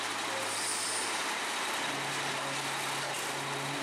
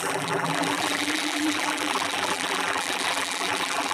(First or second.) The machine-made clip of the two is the second